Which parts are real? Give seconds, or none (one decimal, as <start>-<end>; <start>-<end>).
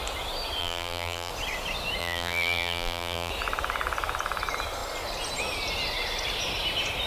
0.0-0.6; 1.3-2.0; 3.3-7.1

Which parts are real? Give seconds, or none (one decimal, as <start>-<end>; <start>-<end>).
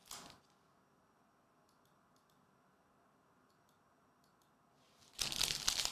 0.0-5.9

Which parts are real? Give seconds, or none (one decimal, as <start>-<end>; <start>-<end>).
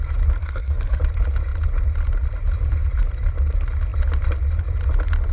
0.0-0.4; 1.0-5.3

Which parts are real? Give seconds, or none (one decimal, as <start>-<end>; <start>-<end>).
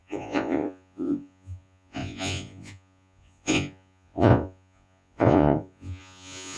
none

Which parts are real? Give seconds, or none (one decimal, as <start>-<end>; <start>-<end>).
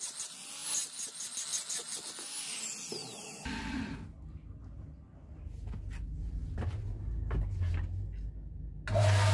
0.0-9.3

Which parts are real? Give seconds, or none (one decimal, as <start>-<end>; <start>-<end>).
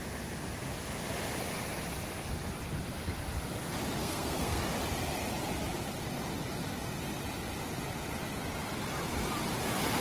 0.0-4.0; 4.6-10.0